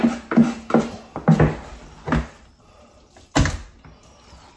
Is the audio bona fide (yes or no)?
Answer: yes